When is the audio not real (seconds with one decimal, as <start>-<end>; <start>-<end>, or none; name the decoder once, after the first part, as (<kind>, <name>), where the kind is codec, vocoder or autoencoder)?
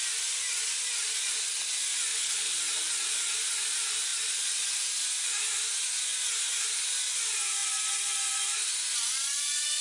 2.1-2.6 (codec, HILCodec)